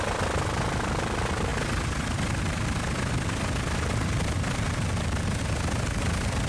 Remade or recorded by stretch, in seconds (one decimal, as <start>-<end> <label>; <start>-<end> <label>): 0.0-6.5 recorded